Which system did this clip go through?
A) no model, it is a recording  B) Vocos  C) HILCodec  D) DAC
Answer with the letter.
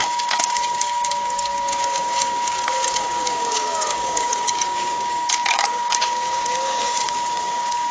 D